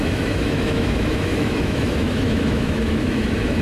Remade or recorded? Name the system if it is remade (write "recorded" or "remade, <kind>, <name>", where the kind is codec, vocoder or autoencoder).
remade, autoencoder, DAC-VAE